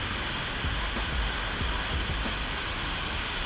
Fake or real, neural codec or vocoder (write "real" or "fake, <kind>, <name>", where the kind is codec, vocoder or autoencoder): real